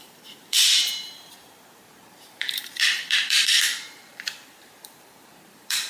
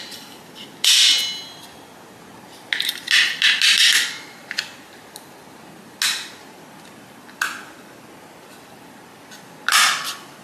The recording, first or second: second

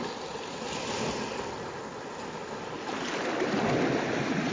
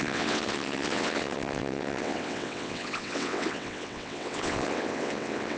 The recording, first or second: first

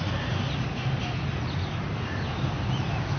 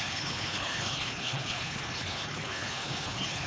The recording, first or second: first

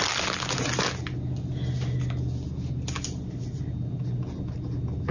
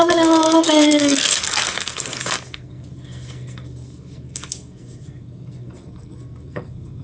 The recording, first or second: first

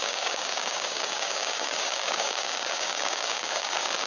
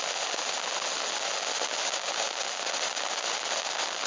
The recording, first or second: second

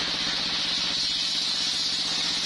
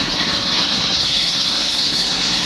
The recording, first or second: first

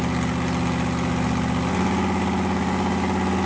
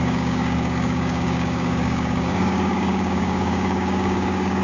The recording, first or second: first